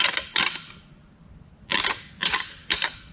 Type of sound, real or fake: real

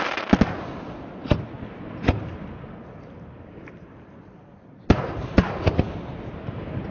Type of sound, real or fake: real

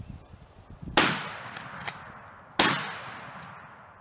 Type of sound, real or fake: real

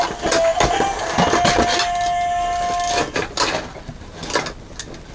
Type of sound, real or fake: real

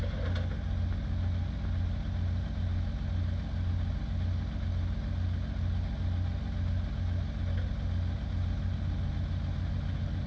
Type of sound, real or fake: real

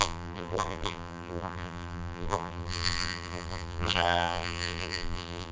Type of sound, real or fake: fake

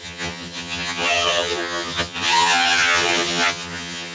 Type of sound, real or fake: fake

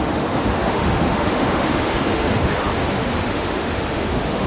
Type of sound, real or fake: fake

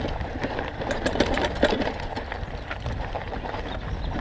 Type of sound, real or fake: real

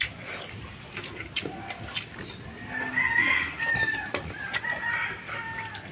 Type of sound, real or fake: real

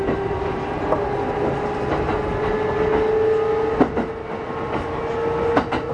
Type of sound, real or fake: real